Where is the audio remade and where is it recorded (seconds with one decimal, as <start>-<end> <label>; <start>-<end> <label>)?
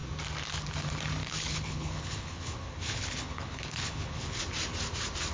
0.0-1.2 recorded; 1.2-4.4 remade; 4.4-5.3 recorded